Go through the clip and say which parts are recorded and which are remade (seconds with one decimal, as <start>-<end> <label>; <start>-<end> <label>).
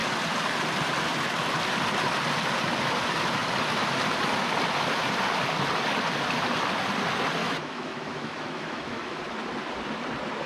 0.0-7.4 recorded; 7.4-9.2 remade; 9.2-10.5 recorded